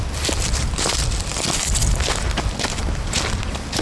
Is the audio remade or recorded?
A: remade